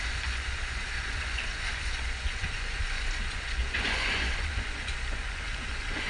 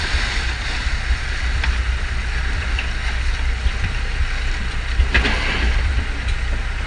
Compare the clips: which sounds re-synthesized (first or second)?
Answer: first